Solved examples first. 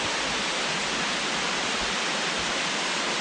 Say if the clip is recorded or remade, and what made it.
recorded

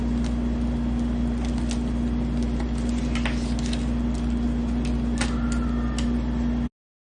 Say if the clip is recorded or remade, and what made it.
recorded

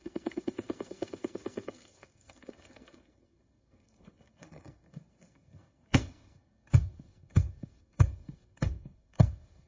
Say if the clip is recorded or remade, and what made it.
remade, codec, SNAC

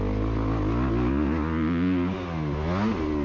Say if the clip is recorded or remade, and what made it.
recorded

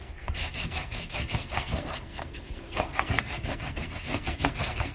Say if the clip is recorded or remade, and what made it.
remade, codec, SNAC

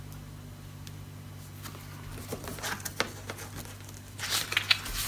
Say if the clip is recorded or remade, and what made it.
recorded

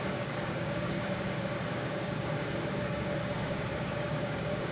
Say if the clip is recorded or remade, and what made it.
remade, codec, DAC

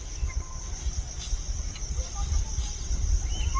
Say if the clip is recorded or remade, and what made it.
recorded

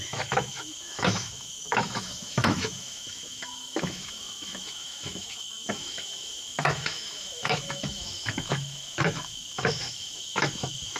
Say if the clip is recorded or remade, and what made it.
remade, autoencoder, DAC-VAE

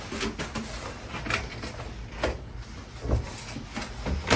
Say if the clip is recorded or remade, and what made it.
recorded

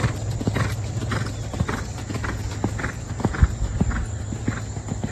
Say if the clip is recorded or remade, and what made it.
recorded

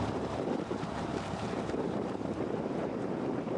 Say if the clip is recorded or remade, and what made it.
remade, vocoder, BigVGAN v2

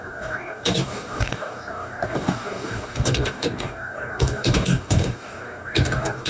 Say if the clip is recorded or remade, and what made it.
remade, codec, DAC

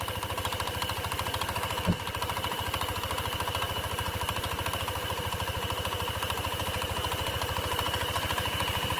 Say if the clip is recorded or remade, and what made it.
remade, vocoder, BigVGAN v2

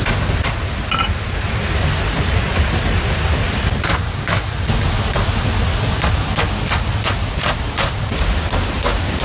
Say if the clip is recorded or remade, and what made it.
recorded